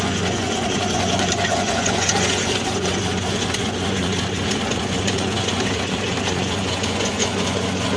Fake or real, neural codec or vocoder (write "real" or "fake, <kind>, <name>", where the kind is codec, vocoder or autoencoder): fake, vocoder, Vocos